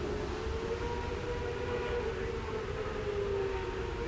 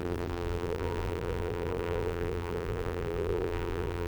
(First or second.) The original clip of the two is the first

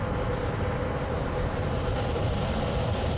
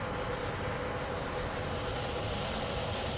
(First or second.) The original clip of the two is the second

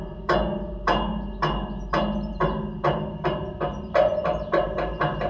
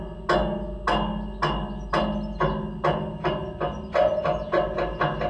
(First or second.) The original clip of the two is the second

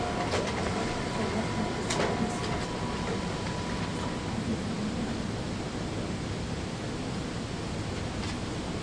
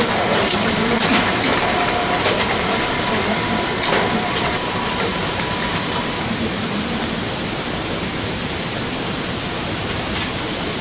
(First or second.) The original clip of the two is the first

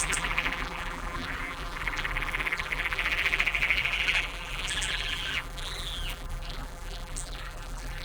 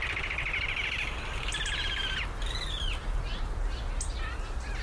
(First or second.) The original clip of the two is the second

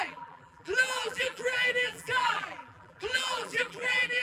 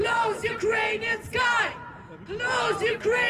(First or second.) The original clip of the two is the second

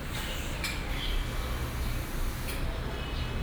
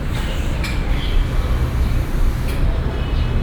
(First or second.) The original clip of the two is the first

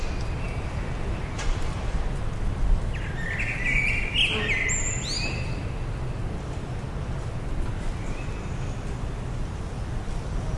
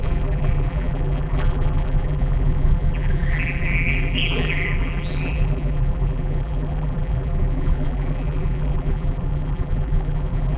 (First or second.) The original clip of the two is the first